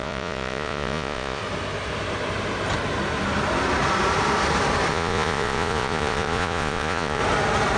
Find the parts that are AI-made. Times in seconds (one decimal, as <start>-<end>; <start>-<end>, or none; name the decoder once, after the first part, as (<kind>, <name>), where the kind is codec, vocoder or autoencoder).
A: 0.0-1.4 (vocoder, Vocos); 4.9-7.2